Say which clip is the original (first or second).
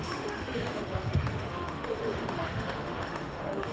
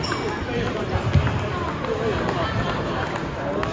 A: second